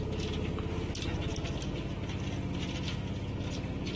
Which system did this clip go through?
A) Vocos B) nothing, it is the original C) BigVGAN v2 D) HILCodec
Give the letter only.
B